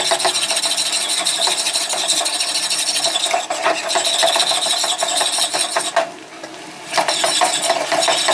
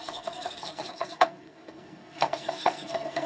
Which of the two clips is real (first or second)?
first